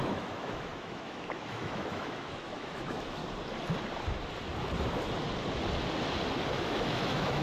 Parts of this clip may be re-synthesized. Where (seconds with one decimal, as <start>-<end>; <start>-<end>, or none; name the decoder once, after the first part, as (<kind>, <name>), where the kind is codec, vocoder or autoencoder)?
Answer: 0.0-3.2 (autoencoder, DAC-VAE); 6.6-7.4